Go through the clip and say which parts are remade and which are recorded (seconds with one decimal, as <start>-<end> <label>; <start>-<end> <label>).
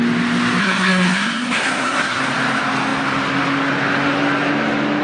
0.0-0.6 recorded; 0.6-2.2 remade; 2.2-5.0 recorded